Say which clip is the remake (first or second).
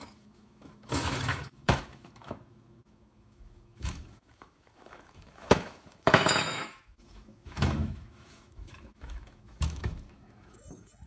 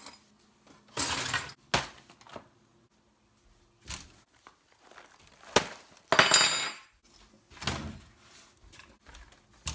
first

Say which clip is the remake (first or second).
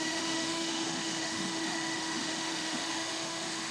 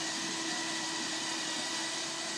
first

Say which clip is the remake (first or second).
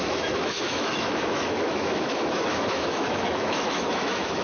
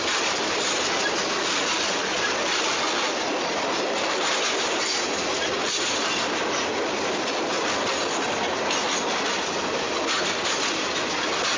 first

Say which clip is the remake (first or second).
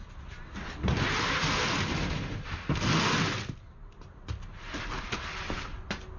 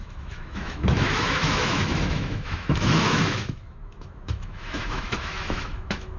second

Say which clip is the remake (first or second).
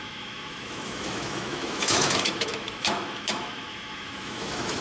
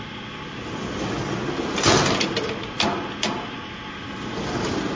first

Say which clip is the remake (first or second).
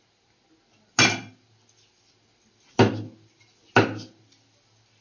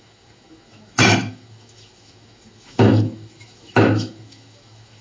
second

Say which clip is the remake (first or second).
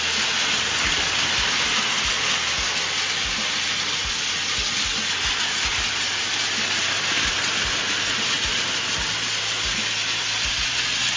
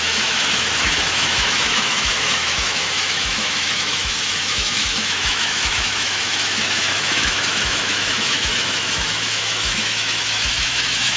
second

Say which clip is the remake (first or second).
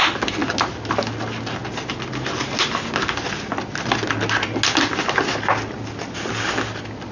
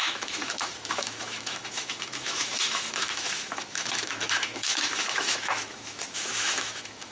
second